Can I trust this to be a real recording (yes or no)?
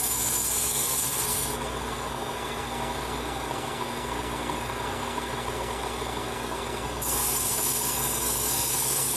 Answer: no